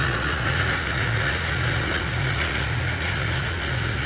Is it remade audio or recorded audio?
remade